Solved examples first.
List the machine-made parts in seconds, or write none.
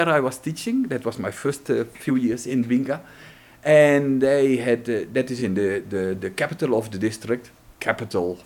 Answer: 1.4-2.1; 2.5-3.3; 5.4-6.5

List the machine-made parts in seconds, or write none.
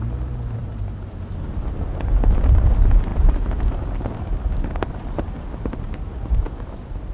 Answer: 0.6-1.5; 3.1-3.8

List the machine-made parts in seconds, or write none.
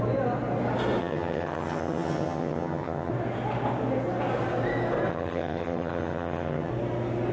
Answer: 1.0-3.1; 5.1-6.7